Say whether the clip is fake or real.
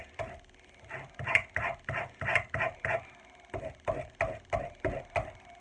real